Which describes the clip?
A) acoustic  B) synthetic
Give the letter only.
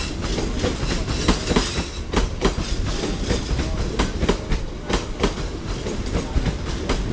A